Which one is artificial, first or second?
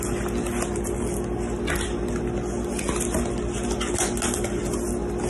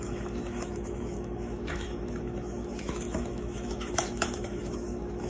second